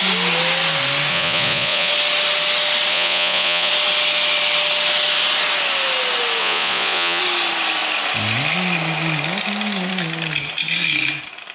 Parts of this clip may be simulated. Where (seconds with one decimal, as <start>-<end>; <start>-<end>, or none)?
1.1-1.9; 2.9-3.7; 6.4-7.2